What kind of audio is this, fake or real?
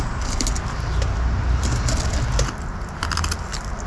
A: real